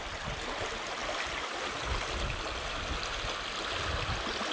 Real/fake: real